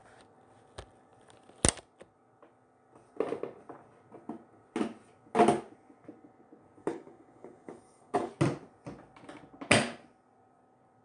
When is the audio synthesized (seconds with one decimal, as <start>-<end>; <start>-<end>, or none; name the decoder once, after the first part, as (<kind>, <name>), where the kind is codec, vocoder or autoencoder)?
6.8-8.3 (codec, DAC)